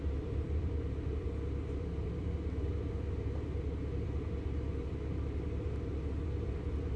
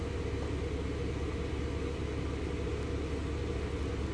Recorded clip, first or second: second